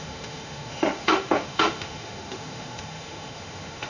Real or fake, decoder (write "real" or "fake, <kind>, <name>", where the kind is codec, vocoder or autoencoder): fake, autoencoder, DAC-VAE